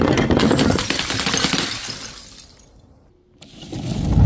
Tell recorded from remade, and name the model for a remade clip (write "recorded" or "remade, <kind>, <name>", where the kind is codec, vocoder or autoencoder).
recorded